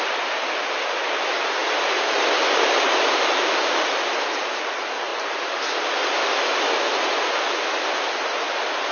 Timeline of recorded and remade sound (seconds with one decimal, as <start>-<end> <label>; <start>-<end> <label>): 0.0-8.9 recorded